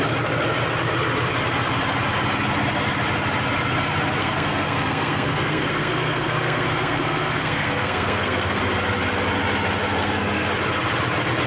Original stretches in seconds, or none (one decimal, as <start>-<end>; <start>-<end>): 0.0-4.2; 8.6-10.0; 10.5-11.5